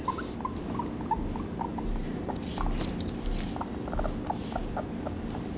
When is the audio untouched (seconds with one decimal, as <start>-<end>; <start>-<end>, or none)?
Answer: 0.0-1.7; 2.3-5.6